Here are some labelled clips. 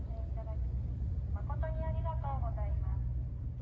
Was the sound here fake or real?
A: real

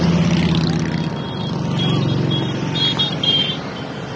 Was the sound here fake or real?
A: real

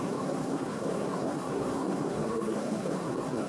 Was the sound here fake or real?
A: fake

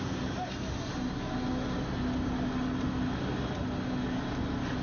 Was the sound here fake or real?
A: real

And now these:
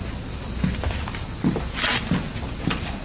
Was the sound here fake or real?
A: real